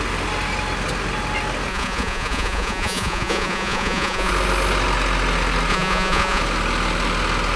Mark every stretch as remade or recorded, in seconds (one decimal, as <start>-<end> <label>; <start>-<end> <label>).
0.0-1.7 recorded; 1.7-4.3 remade; 4.3-5.7 recorded; 5.7-6.4 remade; 6.4-7.6 recorded